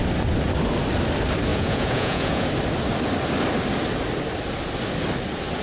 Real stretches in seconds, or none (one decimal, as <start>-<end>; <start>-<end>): 0.0-1.5; 2.5-5.6